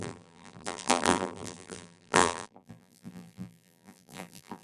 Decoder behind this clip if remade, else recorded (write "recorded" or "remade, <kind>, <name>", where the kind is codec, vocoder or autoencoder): remade, vocoder, BigVGAN v2